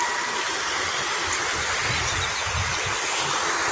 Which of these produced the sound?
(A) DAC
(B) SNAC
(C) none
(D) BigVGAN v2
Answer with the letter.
C